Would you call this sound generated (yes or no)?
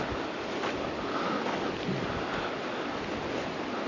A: no